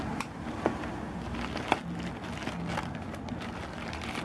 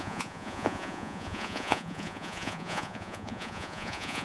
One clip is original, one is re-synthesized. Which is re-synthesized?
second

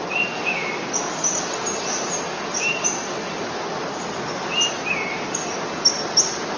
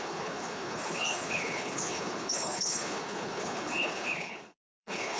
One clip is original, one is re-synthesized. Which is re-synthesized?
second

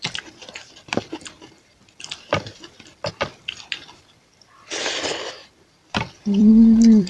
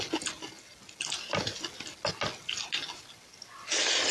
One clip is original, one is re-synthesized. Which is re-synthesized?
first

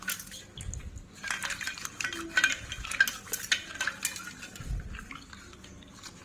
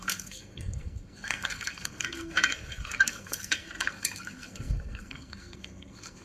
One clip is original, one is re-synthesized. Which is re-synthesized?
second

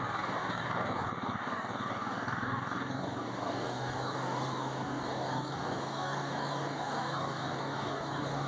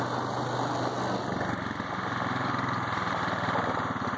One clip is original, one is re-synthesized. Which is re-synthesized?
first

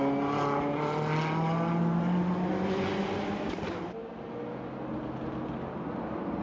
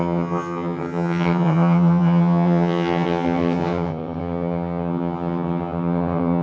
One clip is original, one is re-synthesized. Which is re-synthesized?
second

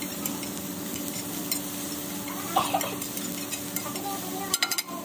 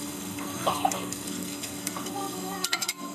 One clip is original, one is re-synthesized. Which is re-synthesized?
second